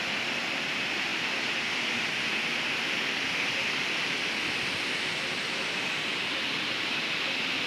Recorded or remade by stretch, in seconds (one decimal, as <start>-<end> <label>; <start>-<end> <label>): 0.0-7.7 recorded